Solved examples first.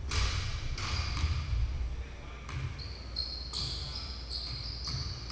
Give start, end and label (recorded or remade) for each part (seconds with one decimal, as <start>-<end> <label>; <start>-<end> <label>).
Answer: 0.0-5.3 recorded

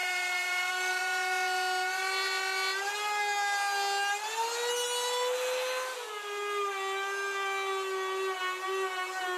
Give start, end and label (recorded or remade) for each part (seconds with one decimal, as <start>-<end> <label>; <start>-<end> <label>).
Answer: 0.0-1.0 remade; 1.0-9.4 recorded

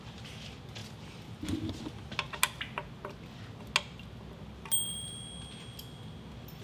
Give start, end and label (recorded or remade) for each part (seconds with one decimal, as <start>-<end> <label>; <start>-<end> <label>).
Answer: 0.0-6.6 recorded

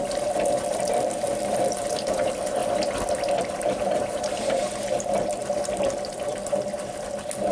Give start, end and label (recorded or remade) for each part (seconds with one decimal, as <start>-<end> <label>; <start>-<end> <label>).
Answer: 0.0-0.7 recorded; 0.7-2.6 remade; 2.6-3.4 recorded; 3.4-5.4 remade; 5.4-7.5 recorded

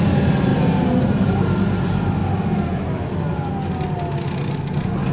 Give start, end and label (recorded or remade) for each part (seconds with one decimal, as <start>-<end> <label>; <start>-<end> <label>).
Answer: 0.0-0.5 recorded; 0.5-1.6 remade; 1.6-5.1 recorded

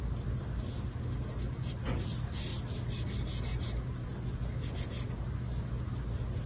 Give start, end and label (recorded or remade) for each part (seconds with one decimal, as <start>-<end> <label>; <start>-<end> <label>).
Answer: 0.0-6.5 recorded